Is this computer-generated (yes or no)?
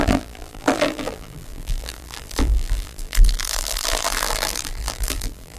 yes